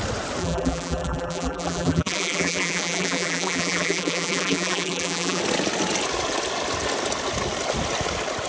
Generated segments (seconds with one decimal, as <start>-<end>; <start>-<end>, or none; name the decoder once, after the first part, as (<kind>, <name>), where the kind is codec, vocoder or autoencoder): 0.4-5.4 (vocoder, BigVGAN v2)

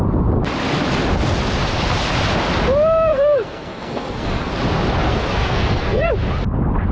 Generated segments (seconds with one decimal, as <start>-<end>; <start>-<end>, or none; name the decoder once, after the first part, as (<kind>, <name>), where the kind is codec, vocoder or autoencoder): 3.1-4.5 (codec, SNAC); 5.0-6.1